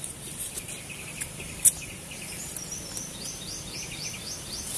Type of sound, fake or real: real